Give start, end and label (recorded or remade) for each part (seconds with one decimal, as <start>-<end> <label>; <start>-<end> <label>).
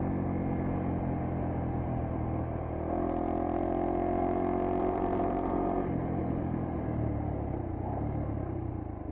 0.0-4.8 recorded; 4.8-8.7 remade; 8.7-9.1 recorded